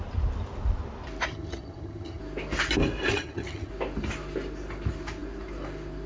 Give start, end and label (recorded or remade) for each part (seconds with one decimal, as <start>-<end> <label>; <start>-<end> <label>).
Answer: 0.0-1.3 recorded; 1.3-2.2 remade; 2.2-3.1 recorded; 3.1-3.7 remade; 3.7-6.1 recorded